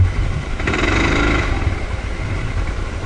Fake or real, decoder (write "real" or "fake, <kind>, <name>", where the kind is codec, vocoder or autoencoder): real